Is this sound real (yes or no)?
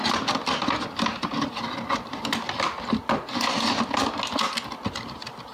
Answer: yes